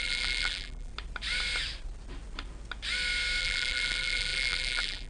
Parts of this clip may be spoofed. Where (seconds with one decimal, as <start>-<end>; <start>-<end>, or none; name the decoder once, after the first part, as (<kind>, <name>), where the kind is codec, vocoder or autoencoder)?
0.0-0.9 (vocoder, BigVGAN v2); 3.4-5.1